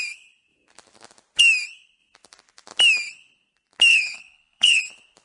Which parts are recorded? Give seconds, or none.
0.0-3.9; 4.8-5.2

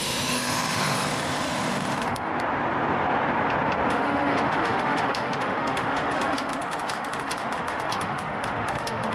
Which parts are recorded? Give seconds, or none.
2.3-3.9

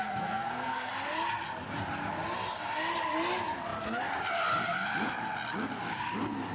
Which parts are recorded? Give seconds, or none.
0.9-6.5

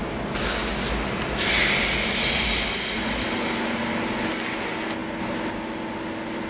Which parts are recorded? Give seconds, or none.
0.0-6.5

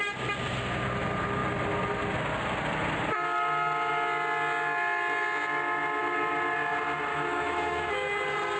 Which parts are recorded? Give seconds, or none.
0.0-7.1; 7.9-8.6